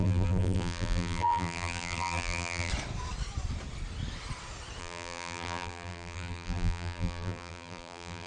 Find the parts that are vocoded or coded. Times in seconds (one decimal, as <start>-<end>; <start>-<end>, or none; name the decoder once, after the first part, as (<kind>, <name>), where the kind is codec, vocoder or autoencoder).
0.0-2.7 (vocoder, BigVGAN v2); 4.8-8.3